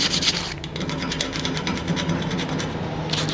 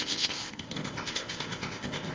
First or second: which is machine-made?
second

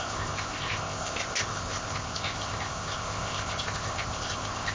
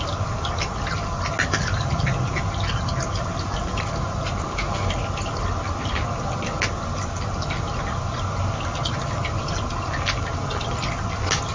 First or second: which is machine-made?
first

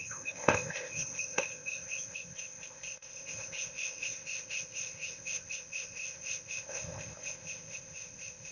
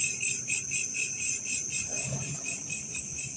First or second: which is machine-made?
first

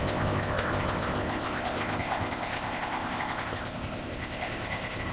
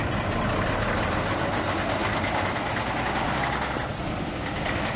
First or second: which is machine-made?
first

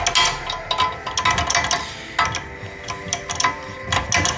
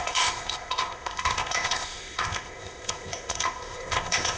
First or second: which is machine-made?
second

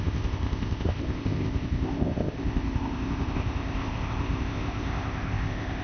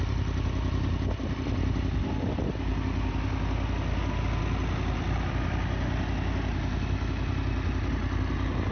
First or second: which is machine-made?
first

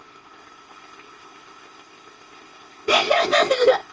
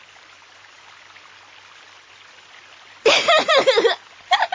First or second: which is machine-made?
first